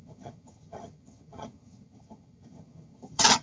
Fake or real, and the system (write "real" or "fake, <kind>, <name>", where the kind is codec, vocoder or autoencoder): fake, vocoder, HiFi-GAN